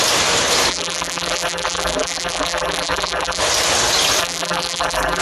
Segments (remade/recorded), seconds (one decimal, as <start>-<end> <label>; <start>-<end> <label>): 0.0-0.7 recorded; 0.7-3.4 remade; 3.4-4.2 recorded; 4.2-5.2 remade

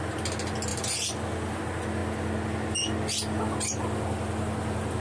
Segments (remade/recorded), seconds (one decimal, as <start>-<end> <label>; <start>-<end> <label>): 0.0-0.7 recorded; 0.7-1.6 remade; 1.6-5.0 recorded

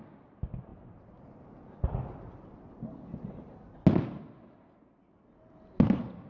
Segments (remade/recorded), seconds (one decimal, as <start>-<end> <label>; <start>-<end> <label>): 0.0-6.3 recorded

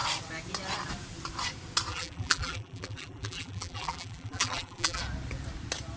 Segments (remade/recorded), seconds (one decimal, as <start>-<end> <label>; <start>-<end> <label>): 0.0-1.9 recorded; 1.9-5.0 remade; 5.0-6.0 recorded

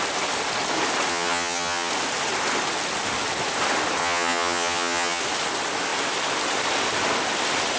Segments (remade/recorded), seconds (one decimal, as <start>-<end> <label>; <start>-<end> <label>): 0.0-1.1 recorded; 1.1-1.9 remade; 1.9-4.0 recorded; 4.0-5.2 remade; 5.2-7.8 recorded

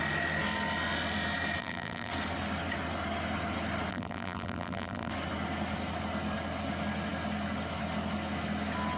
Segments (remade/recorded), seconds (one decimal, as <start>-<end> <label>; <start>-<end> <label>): 0.0-1.6 recorded; 1.6-2.1 remade; 2.1-3.9 recorded; 3.9-5.1 remade; 5.1-9.0 recorded

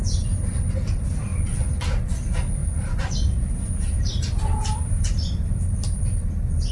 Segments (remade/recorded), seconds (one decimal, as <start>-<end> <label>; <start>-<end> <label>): 0.0-2.6 recorded; 2.6-6.7 remade